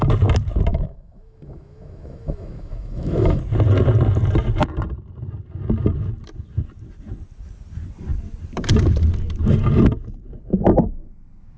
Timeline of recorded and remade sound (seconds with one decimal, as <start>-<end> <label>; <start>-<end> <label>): 0.0-0.7 recorded; 0.7-3.4 remade; 3.4-11.6 recorded